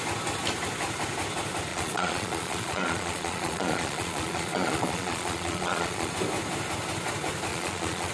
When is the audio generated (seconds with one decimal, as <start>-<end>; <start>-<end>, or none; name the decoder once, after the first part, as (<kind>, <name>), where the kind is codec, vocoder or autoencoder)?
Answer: 1.7-6.1 (vocoder, Vocos); 7.5-8.1